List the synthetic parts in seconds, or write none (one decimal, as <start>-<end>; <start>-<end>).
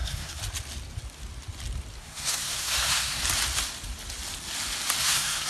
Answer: 0.0-0.4; 2.0-3.2; 5.0-5.5